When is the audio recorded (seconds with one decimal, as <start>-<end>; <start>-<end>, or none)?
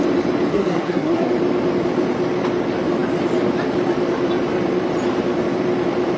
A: 0.0-0.5; 1.3-6.2